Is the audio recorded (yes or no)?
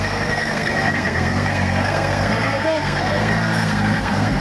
no